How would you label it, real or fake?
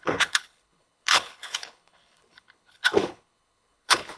fake